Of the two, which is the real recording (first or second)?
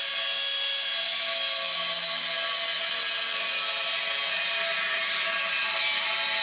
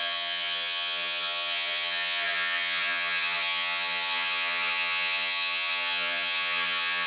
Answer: first